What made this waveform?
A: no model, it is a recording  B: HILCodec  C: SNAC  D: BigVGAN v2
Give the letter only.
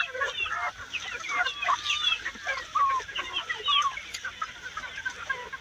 A